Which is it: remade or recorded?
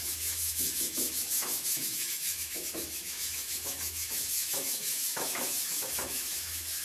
remade